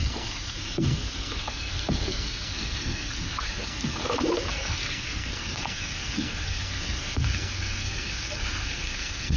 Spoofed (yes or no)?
yes